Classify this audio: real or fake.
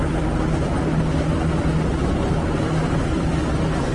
real